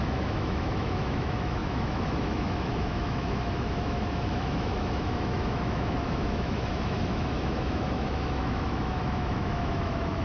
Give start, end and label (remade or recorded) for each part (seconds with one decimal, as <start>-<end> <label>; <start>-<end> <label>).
0.0-10.2 remade